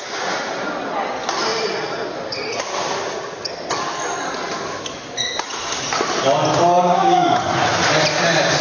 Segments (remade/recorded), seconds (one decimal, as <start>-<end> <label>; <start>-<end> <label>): 0.0-6.9 recorded; 6.9-7.4 remade; 7.4-8.6 recorded